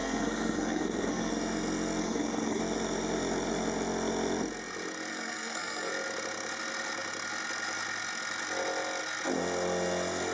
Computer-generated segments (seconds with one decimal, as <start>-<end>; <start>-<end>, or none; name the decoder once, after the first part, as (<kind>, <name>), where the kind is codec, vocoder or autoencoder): 0.0-1.3 (codec, SNAC); 2.0-2.6; 5.1-5.9